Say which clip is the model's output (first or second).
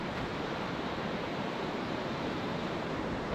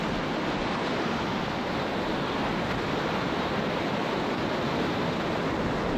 first